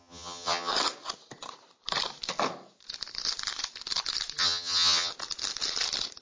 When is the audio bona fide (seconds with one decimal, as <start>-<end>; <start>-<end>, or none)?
0.7-4.4; 5.1-6.2